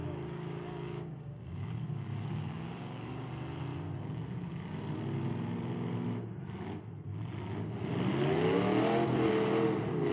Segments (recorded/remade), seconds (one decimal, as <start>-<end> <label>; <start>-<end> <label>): 0.0-3.3 remade; 3.3-10.1 recorded